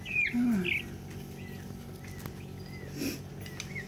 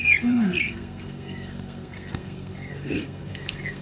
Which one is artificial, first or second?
second